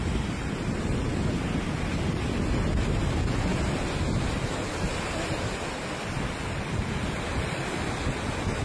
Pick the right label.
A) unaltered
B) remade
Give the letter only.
A